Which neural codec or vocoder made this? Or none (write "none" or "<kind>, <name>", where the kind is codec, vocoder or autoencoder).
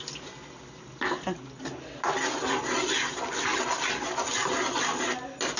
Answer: none